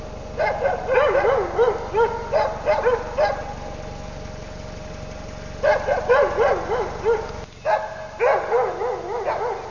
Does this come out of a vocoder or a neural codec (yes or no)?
no